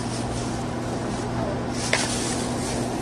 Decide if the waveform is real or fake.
real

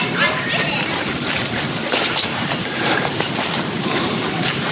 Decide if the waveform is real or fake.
fake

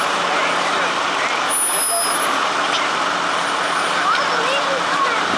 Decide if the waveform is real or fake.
real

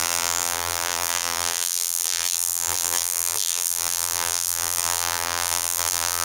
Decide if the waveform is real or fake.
fake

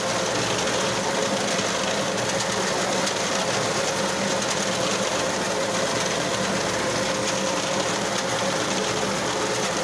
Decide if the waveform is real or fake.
real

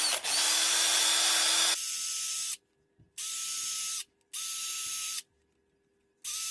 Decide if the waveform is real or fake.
real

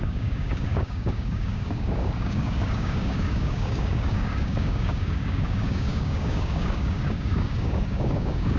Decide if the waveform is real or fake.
fake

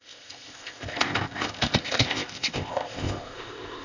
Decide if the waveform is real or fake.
fake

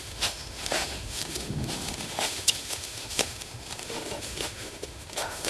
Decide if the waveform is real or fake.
fake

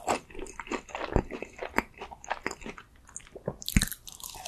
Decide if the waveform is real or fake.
real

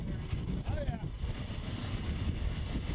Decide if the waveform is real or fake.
fake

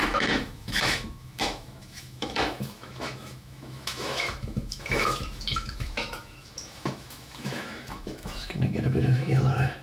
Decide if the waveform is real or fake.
fake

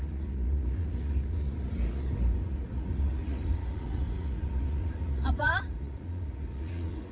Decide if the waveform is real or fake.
fake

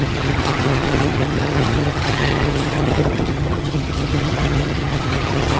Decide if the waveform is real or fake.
fake